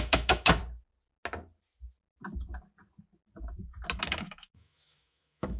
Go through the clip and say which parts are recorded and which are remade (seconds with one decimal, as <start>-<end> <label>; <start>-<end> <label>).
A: 0.0-0.6 remade; 0.6-4.0 recorded; 4.0-5.6 remade